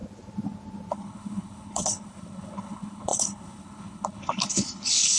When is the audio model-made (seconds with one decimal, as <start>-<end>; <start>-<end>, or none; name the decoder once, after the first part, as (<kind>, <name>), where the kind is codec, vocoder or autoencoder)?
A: 0.9-5.2 (codec, HILCodec)